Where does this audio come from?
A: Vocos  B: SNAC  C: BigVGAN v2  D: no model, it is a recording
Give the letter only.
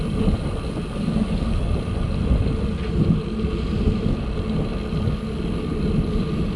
D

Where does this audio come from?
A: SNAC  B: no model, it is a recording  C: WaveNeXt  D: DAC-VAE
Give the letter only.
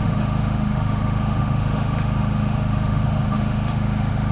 D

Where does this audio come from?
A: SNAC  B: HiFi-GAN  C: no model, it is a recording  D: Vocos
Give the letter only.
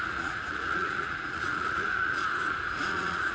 D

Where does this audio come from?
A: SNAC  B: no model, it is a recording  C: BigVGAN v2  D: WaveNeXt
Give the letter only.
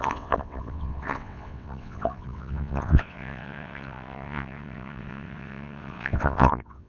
D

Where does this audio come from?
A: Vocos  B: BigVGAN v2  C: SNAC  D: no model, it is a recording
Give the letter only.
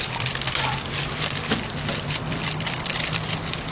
B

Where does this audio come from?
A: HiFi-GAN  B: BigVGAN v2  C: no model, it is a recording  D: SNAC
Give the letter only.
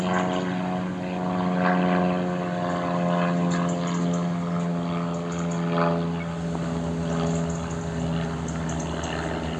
C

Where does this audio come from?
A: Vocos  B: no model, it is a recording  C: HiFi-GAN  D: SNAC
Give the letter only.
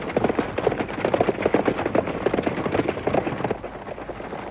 B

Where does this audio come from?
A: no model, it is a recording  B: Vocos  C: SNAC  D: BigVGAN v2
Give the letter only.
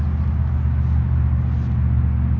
A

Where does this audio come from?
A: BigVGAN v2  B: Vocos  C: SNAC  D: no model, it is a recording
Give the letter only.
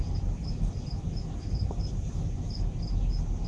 D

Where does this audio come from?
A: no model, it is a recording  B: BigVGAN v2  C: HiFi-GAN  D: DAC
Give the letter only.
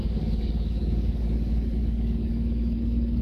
D